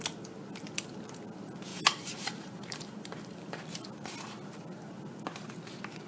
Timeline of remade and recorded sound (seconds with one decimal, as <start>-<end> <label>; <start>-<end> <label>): 0.0-1.7 recorded; 1.7-3.6 remade; 3.6-6.1 recorded